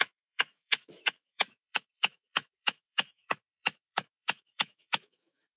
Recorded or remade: remade